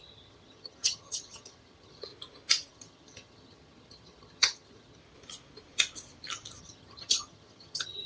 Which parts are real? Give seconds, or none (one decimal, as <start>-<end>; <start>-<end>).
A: 2.1-2.7; 5.0-6.6